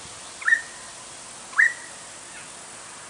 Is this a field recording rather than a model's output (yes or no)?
yes